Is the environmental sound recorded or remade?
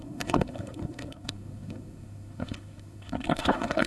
remade